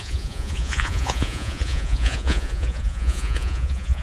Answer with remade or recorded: remade